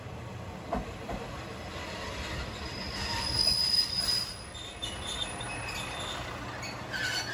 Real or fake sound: real